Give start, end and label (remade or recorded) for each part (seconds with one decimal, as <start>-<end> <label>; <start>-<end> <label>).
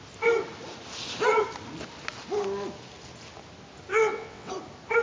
0.0-3.9 recorded; 3.9-4.5 remade; 4.5-5.0 recorded